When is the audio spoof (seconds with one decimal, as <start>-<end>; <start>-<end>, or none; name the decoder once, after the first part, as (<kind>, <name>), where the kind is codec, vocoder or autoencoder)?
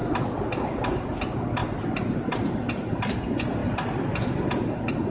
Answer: none